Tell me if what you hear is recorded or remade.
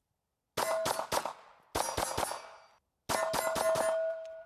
recorded